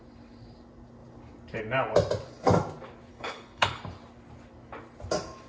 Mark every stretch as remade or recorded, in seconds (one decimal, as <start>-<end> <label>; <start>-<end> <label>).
0.0-3.1 recorded; 3.1-3.8 remade; 3.8-5.5 recorded